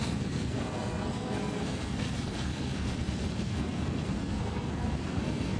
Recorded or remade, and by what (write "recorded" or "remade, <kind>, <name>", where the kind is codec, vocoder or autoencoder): remade, codec, SNAC